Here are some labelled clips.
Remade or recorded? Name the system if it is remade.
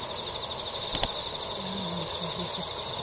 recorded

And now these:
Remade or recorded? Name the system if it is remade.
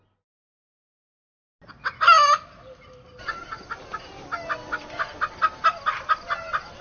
recorded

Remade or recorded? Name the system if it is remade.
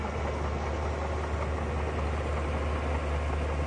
recorded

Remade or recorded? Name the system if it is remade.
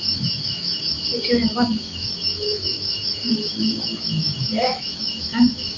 remade, autoencoder, DAC-VAE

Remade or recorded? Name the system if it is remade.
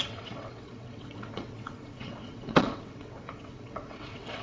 remade, vocoder, WaveNeXt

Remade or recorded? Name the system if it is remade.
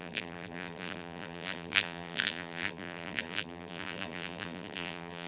remade, vocoder, BigVGAN v2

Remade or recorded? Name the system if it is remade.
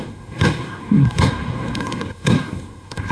remade, codec, SNAC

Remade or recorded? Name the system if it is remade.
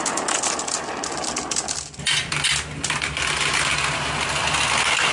recorded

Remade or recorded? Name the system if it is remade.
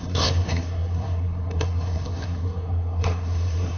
remade, codec, SNAC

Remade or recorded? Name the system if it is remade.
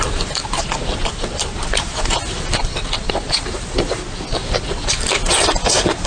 recorded